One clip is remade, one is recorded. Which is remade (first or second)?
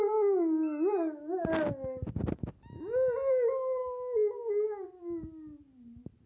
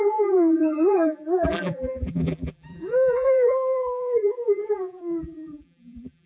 second